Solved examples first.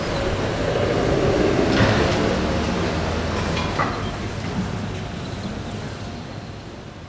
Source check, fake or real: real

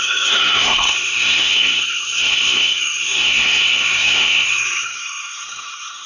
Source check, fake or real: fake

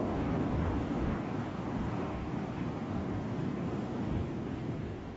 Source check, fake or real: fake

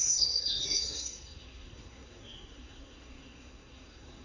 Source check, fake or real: fake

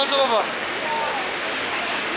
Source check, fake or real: fake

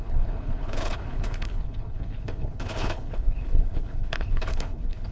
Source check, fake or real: fake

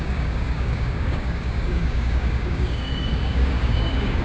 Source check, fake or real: fake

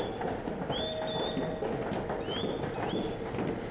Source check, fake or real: real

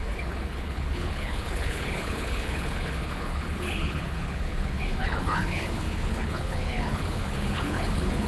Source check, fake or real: fake